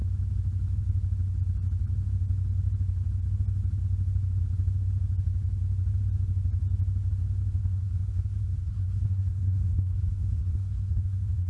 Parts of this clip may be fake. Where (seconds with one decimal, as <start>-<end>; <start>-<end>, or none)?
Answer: 7.6-11.5